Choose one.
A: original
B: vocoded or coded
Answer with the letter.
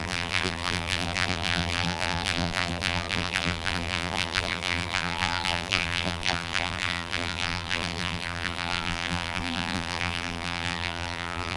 B